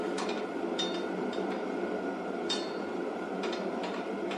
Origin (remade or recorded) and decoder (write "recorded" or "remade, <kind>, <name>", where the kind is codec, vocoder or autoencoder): remade, vocoder, BigVGAN v2